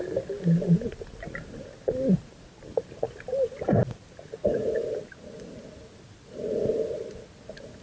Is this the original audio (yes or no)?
yes